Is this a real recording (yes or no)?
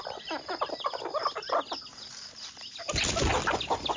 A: yes